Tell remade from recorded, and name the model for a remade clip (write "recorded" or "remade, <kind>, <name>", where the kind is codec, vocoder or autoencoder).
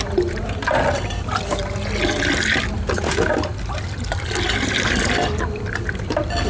recorded